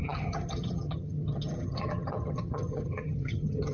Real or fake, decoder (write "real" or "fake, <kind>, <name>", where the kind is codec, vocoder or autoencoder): fake, vocoder, HiFi-GAN